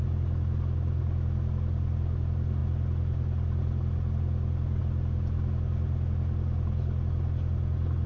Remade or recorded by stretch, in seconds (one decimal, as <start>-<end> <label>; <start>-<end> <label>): 0.0-8.1 recorded